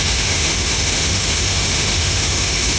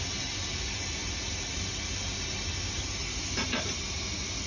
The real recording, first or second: second